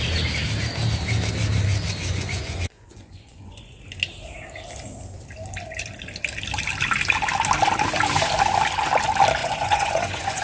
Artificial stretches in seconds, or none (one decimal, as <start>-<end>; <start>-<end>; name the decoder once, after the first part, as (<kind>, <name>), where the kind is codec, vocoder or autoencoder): 2.0-3.8 (vocoder, Vocos); 9.4-10.4